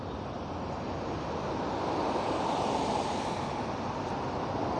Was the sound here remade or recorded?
recorded